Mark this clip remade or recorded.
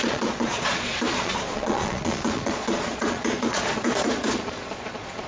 remade